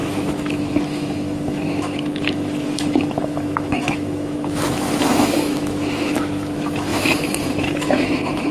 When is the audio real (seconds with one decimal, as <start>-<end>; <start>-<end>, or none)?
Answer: none